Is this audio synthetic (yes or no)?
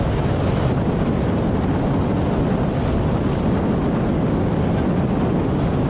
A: no